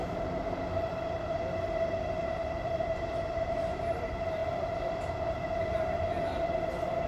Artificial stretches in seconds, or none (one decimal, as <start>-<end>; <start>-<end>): 0.0-7.1

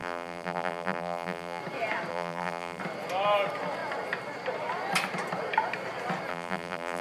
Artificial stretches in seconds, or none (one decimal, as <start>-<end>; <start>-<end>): 0.0-1.6; 2.1-2.8; 6.3-7.0